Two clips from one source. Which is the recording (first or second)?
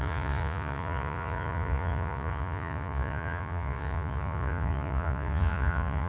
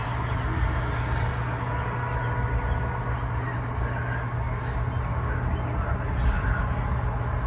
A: second